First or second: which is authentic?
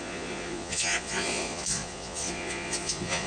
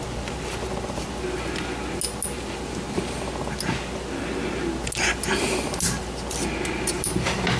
second